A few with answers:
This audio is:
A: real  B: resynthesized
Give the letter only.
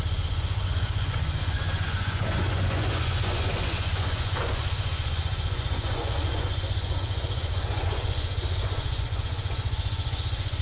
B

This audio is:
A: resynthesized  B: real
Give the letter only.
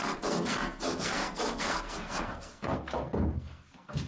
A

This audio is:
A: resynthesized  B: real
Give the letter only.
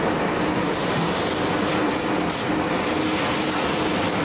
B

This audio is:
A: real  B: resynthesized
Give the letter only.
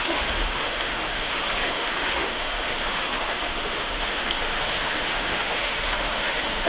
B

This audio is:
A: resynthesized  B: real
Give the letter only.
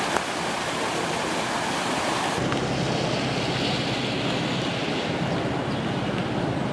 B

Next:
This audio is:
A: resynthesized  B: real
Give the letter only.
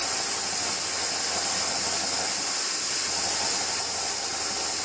B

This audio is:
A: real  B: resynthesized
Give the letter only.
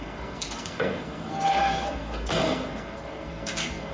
B